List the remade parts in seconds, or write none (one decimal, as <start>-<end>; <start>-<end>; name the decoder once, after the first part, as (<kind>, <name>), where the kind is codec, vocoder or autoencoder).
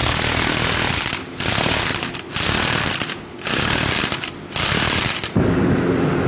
none